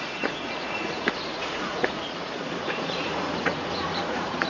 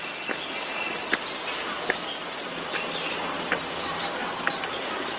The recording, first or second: second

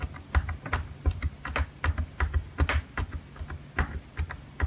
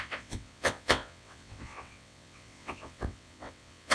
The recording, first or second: first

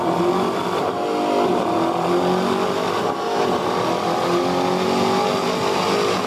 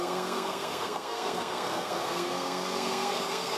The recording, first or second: first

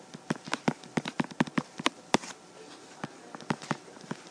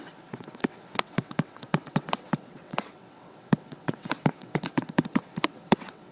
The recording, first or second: first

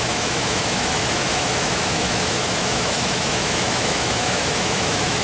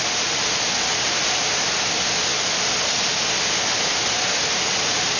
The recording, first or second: second